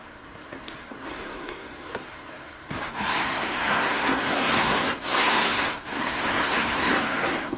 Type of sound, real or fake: fake